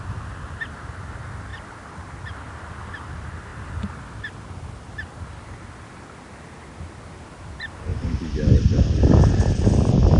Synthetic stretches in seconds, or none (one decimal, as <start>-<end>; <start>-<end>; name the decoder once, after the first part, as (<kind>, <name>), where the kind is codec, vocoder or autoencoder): none